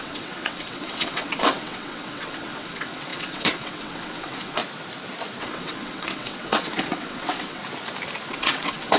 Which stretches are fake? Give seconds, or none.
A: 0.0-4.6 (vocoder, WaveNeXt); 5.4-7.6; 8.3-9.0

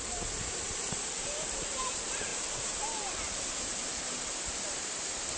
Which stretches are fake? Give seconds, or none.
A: 0.0-5.4 (vocoder, BigVGAN v2)

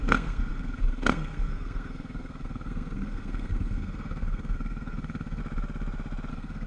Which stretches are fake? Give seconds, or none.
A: 0.0-5.4 (codec, SNAC); 6.3-6.7

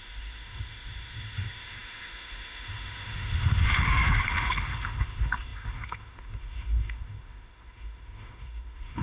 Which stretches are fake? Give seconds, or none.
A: 0.0-9.0 (autoencoder, DAC-VAE)

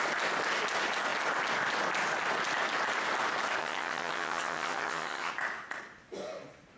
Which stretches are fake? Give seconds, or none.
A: 3.6-5.3 (vocoder, HiFi-GAN)

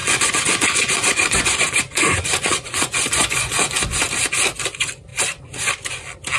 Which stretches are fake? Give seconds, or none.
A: 0.0-3.8 (vocoder, Vocos)